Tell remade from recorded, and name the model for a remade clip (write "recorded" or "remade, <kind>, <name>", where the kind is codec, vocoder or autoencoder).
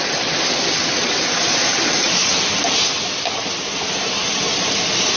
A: recorded